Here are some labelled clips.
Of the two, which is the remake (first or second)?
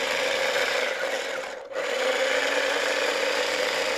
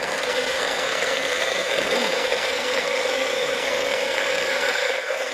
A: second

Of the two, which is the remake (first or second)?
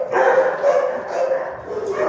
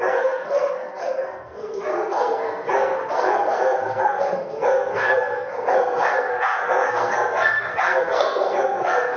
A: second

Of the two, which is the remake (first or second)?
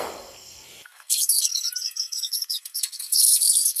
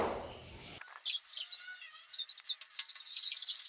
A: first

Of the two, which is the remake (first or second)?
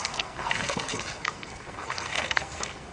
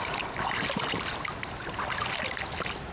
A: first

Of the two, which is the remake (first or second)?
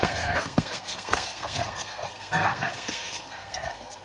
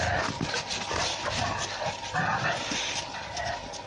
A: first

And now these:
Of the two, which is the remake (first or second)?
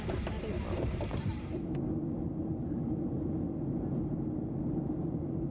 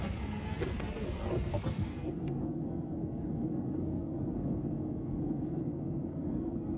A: second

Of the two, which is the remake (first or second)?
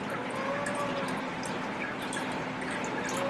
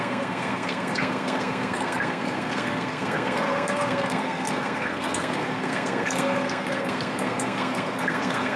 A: second